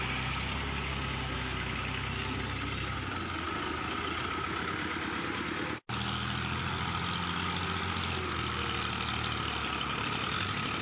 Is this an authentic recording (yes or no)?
yes